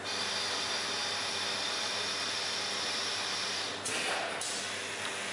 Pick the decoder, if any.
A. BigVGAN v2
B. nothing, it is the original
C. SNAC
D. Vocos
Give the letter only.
A